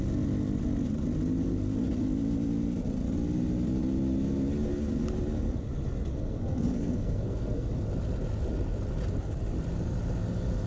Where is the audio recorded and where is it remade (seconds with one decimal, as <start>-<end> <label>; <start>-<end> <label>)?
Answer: 0.0-6.1 recorded; 6.1-7.7 remade; 7.7-10.7 recorded